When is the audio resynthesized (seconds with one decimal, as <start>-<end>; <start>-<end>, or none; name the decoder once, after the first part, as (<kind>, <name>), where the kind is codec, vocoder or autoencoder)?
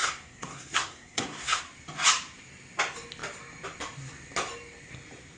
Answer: 0.0-1.6 (codec, SNAC)